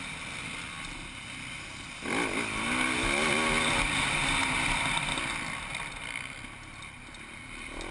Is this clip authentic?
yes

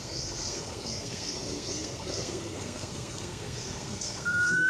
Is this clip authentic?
no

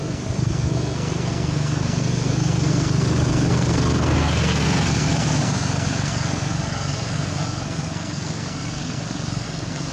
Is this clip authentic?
no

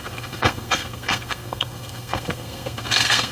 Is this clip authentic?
no